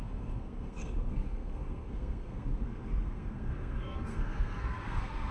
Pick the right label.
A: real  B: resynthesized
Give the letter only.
B